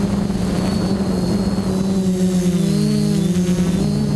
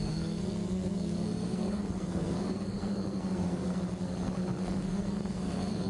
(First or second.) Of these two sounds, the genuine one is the first